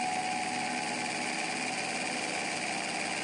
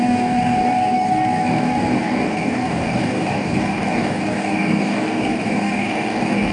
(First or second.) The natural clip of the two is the first